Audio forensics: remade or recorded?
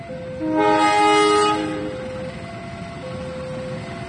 recorded